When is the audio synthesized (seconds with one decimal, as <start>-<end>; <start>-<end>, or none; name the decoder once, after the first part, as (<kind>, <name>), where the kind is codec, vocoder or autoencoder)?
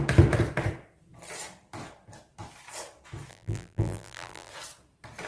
3.3-4.5 (vocoder, BigVGAN v2)